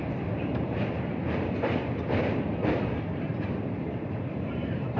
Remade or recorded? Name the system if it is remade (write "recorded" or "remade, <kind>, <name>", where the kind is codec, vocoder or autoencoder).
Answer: remade, vocoder, BigVGAN v2